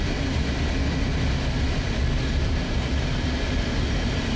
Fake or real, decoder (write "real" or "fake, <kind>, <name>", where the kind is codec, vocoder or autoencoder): real